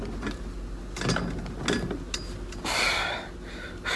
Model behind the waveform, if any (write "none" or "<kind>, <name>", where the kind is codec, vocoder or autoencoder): none